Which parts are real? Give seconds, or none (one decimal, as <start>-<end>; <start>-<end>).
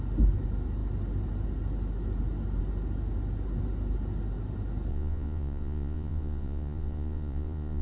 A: 0.0-4.9